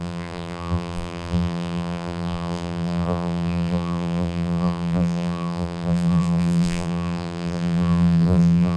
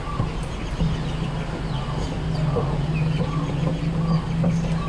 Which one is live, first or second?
second